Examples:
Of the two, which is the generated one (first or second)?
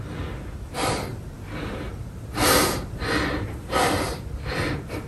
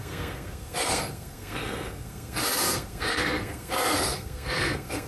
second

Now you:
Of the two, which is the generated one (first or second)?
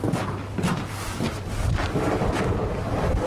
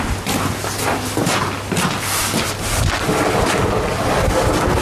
first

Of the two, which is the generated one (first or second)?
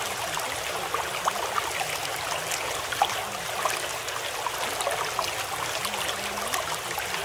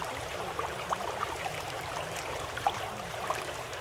second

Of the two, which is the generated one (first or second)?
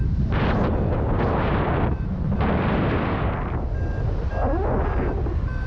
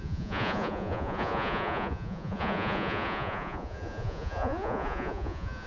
second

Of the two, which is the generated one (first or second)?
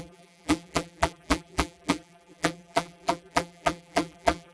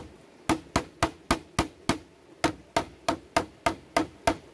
first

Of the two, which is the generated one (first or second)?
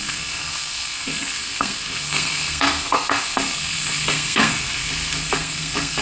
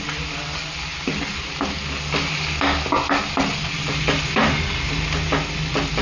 first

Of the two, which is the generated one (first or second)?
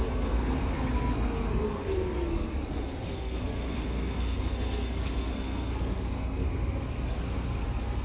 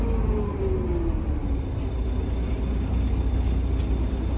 first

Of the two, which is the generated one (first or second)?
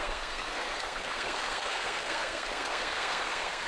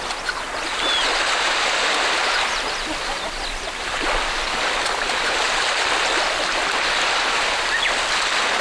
first